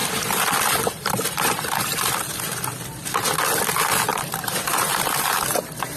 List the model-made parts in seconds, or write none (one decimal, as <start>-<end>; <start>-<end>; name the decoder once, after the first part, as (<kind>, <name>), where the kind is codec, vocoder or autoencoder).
0.0-2.2 (vocoder, BigVGAN v2); 4.1-5.3